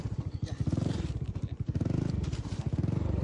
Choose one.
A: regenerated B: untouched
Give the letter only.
A